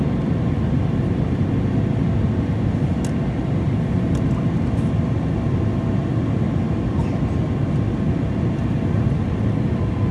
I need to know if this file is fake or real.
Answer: real